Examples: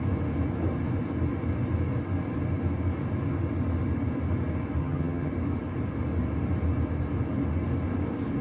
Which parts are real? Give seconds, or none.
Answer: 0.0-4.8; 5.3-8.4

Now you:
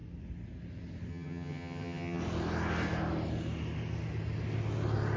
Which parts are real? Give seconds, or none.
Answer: 0.0-1.1; 2.2-5.2